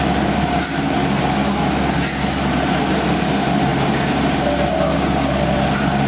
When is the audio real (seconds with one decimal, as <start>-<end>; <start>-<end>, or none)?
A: 0.0-6.1